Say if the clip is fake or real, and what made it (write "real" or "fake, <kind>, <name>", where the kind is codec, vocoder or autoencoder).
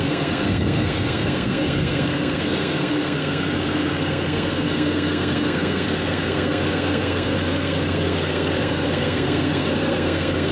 fake, codec, SNAC